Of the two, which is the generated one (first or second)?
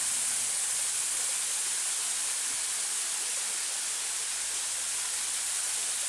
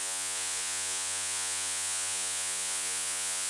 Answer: second